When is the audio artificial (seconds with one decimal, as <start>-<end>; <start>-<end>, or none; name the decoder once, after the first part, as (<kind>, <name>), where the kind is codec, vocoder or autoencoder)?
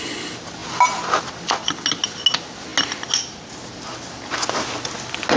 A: none